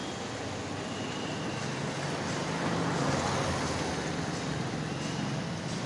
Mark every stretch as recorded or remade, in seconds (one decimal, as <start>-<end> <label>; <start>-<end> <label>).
0.0-5.9 recorded